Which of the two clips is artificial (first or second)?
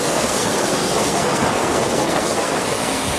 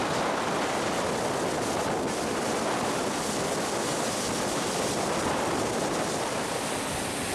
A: first